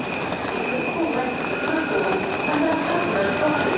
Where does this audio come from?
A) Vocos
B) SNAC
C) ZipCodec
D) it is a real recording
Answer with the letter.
D